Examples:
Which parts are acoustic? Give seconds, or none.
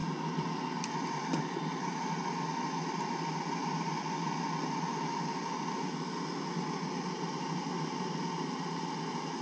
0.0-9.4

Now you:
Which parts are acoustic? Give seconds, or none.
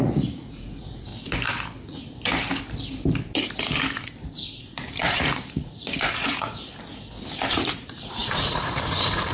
1.1-4.6; 6.7-7.5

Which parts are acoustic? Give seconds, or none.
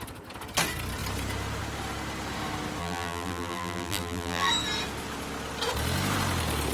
0.0-2.8; 4.5-6.7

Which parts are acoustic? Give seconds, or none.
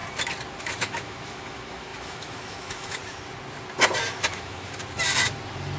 0.0-0.6; 3.0-4.3; 4.8-5.8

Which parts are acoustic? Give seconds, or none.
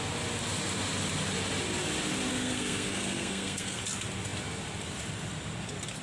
0.0-2.3; 3.8-6.0